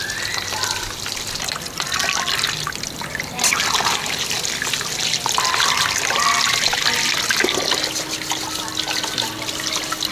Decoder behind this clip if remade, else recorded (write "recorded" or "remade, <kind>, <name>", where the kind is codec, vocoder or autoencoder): recorded